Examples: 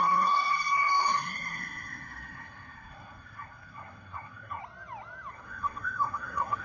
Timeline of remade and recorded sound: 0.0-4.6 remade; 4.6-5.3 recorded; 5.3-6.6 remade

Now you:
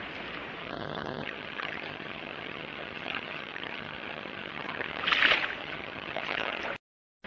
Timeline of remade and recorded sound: 0.0-0.6 recorded; 0.6-5.0 remade; 5.0-5.6 recorded; 5.6-6.6 remade; 6.6-7.3 recorded

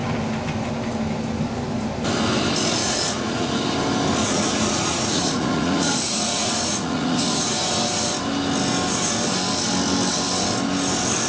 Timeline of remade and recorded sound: 0.0-2.8 recorded; 2.8-3.5 remade; 3.5-4.2 recorded; 4.2-7.7 remade; 7.7-11.3 recorded

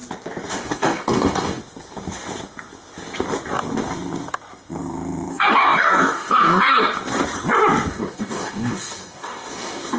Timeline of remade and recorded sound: 0.0-0.5 recorded; 0.5-1.6 remade; 1.6-5.3 recorded; 5.3-6.8 remade; 6.8-7.9 recorded; 7.9-10.0 remade

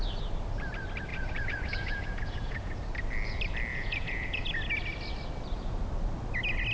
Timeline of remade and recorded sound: 0.0-1.1 recorded; 1.1-2.8 remade; 2.8-3.7 recorded; 3.7-4.4 remade; 4.4-6.7 recorded

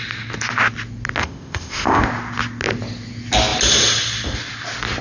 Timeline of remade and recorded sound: 0.0-1.2 recorded; 1.2-2.0 remade; 2.0-5.0 recorded